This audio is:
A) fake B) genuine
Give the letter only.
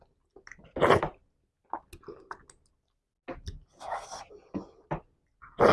B